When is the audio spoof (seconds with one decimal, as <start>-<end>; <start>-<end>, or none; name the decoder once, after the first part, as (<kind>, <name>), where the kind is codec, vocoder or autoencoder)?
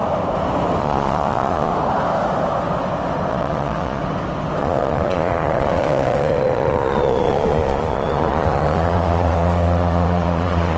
0.8-1.7 (vocoder, Vocos); 3.3-4.0; 4.6-10.8